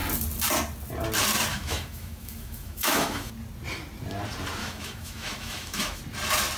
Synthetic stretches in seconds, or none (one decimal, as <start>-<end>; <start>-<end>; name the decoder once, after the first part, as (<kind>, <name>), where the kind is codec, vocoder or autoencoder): 1.5-3.3 (autoencoder, DAC-VAE); 4.6-6.0